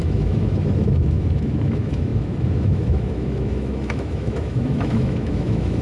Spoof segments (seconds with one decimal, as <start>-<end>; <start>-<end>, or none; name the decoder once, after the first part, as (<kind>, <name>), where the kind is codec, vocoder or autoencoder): 0.0-5.8 (autoencoder, DAC-VAE)